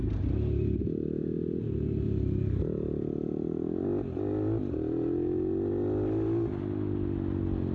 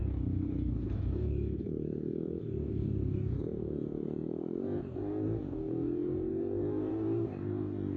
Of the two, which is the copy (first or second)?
second